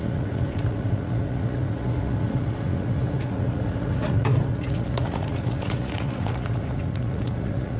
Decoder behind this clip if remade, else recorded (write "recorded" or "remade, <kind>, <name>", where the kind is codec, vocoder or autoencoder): remade, vocoder, Vocos